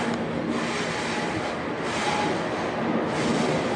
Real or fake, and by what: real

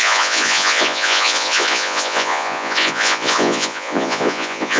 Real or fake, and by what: fake, vocoder, Vocos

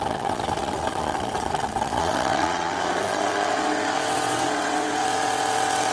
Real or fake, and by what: fake, vocoder, WaveNeXt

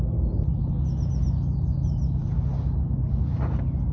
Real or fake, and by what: real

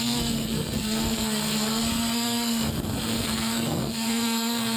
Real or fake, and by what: fake, codec, SNAC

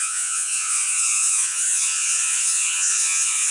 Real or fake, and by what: fake, vocoder, Vocos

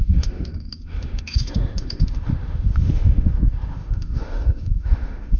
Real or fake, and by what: fake, autoencoder, DAC-VAE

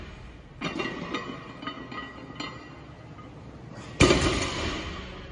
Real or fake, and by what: real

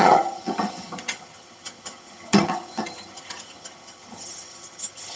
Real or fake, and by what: fake, vocoder, HiFi-GAN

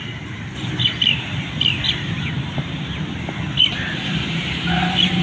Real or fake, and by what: fake, vocoder, BigVGAN v2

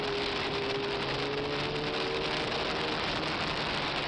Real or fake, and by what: real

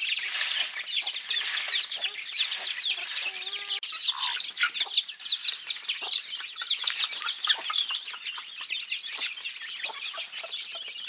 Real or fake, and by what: real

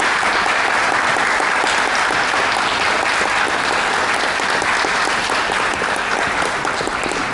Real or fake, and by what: real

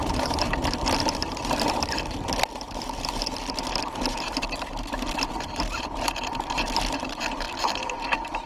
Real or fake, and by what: fake, vocoder, BigVGAN v2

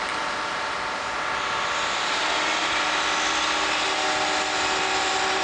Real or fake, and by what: real